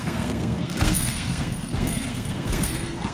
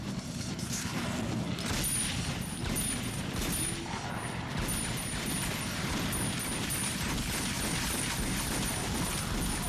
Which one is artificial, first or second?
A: first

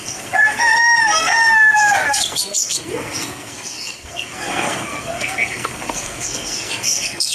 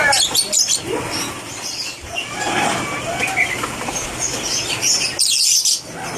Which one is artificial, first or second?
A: first